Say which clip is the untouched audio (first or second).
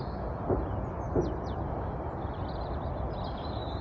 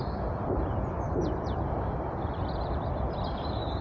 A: first